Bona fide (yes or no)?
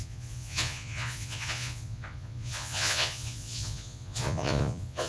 no